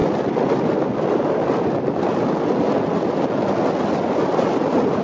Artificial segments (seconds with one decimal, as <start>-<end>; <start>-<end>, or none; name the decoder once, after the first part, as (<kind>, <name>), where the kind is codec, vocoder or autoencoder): none